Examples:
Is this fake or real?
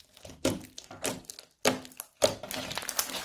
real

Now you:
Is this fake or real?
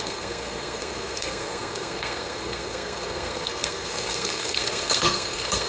fake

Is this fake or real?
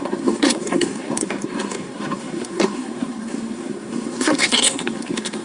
fake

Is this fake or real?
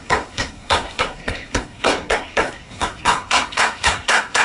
fake